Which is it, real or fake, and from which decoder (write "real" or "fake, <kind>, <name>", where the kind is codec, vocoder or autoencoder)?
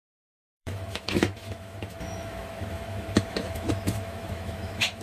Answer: fake, autoencoder, DAC-VAE